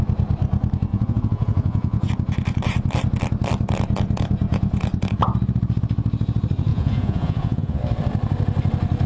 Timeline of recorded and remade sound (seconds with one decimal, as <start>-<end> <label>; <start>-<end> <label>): 0.0-0.9 recorded; 0.9-2.1 remade; 2.1-6.7 recorded; 6.7-7.8 remade; 7.8-9.1 recorded